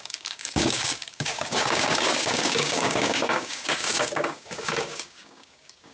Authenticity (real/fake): fake